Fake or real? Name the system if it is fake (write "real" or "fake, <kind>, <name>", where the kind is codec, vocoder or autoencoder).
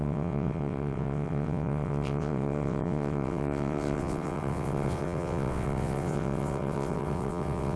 fake, vocoder, WaveNeXt